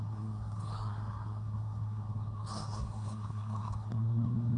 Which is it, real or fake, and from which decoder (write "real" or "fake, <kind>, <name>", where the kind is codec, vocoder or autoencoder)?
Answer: fake, codec, SNAC